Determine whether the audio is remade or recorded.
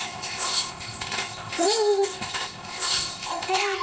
remade